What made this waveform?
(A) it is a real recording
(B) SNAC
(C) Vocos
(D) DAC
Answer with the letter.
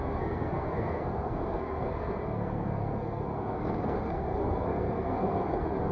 B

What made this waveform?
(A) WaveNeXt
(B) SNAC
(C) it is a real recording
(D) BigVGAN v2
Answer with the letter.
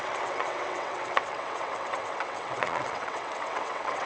A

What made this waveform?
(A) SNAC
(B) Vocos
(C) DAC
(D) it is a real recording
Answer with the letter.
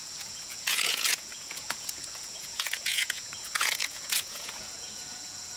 B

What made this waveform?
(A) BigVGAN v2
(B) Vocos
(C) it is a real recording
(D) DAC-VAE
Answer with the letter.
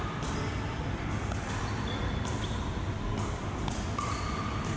C